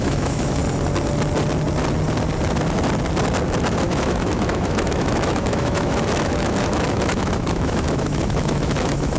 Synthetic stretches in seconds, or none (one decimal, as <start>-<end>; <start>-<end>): 0.0-0.6; 3.7-9.2